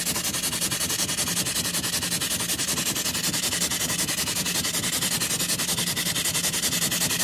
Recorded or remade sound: recorded